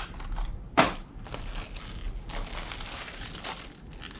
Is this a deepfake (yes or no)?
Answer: no